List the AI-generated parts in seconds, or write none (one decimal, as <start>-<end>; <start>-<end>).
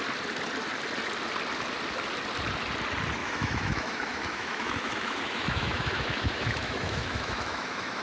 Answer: 3.2-8.0